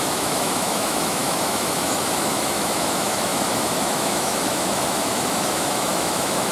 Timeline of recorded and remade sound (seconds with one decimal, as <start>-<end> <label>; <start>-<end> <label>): 0.0-6.5 remade